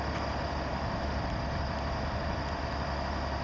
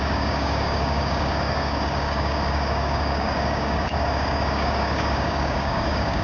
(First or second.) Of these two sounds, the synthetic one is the second